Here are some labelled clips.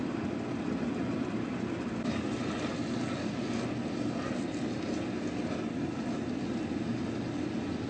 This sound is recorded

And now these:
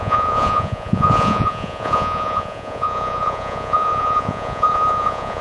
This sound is remade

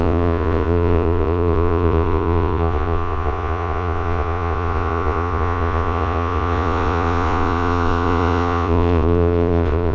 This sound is remade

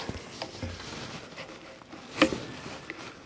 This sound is recorded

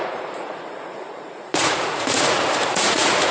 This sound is remade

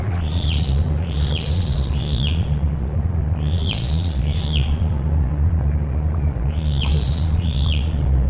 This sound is remade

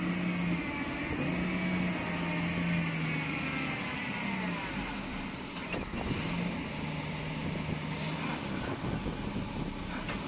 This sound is recorded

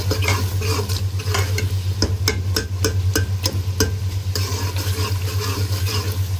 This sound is recorded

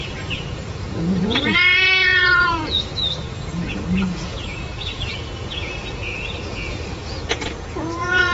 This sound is remade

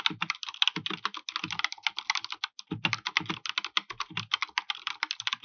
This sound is recorded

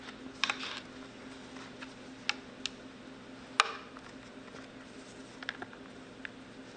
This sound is recorded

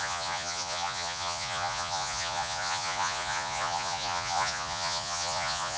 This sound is remade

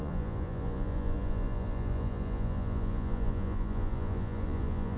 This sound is remade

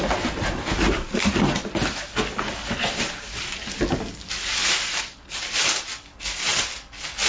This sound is recorded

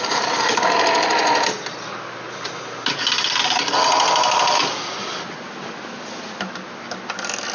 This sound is recorded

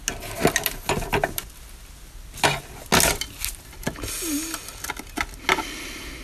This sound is recorded